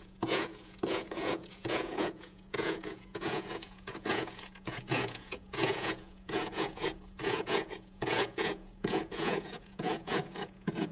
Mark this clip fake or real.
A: fake